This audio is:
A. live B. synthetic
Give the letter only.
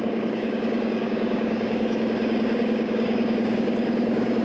B